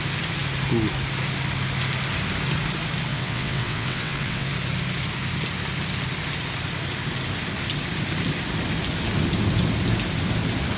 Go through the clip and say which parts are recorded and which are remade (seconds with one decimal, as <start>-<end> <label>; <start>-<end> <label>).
0.0-3.1 recorded; 3.1-4.5 remade; 4.5-10.8 recorded